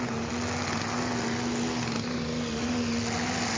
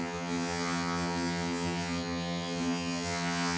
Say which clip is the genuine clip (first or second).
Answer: first